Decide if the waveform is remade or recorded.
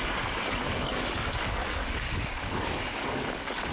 remade